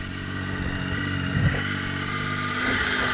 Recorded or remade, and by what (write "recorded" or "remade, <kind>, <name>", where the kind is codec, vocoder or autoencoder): recorded